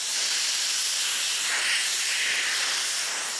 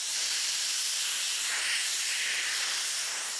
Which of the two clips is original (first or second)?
first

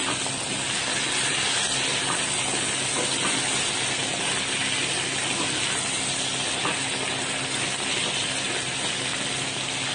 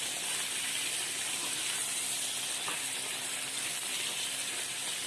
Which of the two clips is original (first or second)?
first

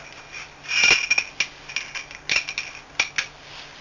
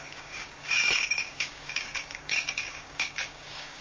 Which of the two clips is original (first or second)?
first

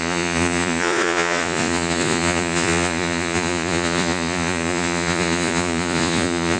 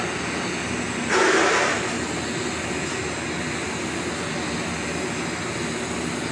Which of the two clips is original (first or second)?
second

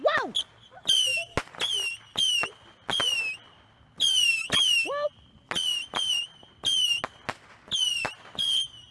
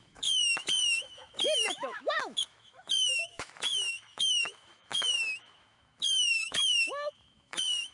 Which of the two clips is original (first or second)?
first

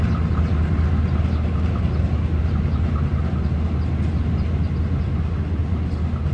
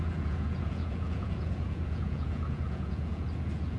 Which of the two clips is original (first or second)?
first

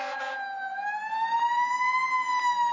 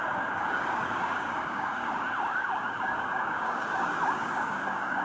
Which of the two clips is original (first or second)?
first